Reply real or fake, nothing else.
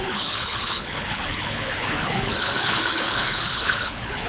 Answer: fake